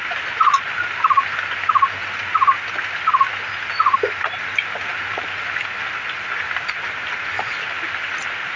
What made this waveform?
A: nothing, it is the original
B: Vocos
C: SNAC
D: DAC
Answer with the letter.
A